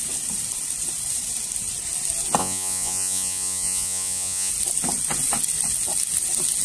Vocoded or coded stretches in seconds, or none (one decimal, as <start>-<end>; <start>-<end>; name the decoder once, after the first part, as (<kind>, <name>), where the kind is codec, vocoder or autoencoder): 2.4-4.5 (vocoder, Vocos)